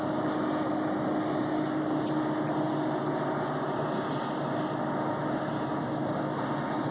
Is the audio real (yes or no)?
yes